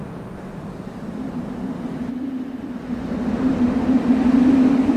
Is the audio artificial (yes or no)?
no